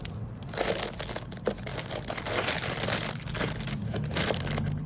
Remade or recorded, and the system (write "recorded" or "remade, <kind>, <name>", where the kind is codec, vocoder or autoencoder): recorded